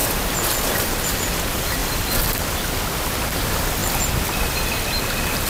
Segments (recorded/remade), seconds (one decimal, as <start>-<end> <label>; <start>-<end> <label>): 0.0-1.1 recorded; 1.1-3.8 remade; 3.8-4.7 recorded; 4.7-5.5 remade